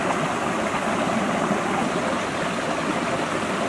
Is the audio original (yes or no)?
yes